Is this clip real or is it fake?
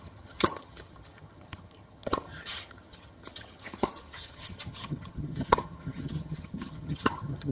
fake